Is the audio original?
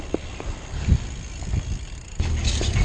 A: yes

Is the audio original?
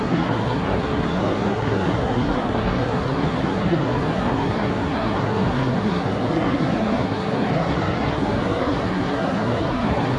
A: no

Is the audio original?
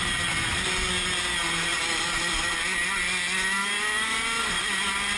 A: yes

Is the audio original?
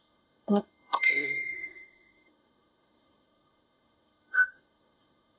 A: no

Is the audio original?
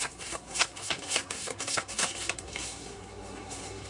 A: no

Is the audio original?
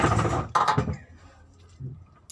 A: yes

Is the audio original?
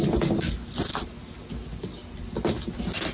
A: yes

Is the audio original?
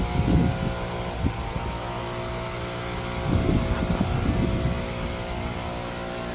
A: yes